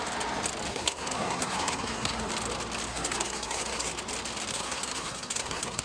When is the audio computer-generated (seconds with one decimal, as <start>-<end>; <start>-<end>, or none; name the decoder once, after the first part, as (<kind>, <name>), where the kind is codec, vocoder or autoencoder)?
0.7-2.3 (codec, SNAC); 2.9-3.9; 4.5-5.8

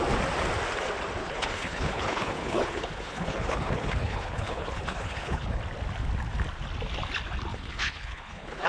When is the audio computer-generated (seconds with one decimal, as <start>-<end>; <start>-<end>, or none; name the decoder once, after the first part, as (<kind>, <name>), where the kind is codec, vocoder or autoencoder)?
1.2-5.6 (codec, HILCodec); 7.5-8.7

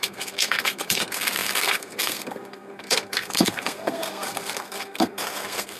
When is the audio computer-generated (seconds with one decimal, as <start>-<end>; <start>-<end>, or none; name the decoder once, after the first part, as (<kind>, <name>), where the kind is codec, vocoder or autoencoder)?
0.0-5.8 (codec, SNAC)

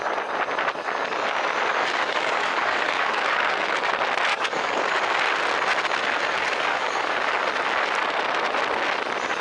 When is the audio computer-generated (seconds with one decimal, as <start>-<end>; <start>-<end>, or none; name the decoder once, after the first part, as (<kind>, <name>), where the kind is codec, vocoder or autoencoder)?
1.8-3.9 (codec, DAC); 4.3-4.9; 6.3-7.4

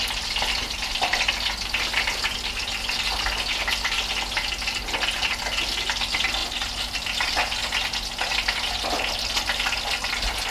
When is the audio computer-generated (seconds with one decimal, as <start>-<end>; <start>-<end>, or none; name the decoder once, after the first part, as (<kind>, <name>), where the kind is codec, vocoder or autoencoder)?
none

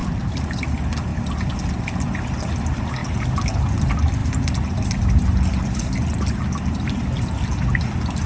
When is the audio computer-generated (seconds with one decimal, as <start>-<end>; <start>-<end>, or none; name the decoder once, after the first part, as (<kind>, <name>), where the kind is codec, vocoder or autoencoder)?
none